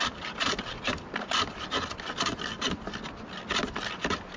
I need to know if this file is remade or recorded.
recorded